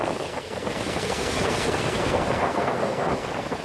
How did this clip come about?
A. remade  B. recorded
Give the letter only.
A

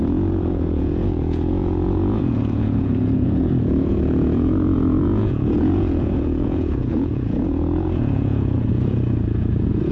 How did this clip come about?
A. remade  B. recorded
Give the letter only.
A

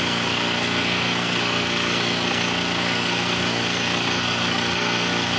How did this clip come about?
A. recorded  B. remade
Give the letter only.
B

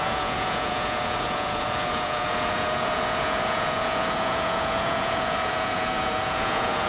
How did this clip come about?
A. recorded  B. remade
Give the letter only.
B